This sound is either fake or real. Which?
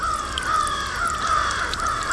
real